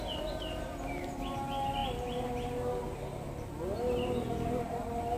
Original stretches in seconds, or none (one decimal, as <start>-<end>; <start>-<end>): 0.0-5.2